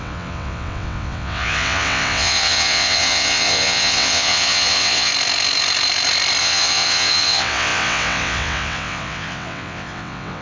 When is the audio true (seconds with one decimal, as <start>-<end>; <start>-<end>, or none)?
5.1-6.4